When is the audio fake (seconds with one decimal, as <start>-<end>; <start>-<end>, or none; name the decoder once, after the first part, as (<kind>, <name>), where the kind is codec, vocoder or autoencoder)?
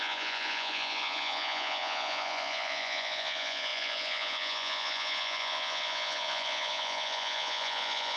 0.0-8.2 (vocoder, Vocos)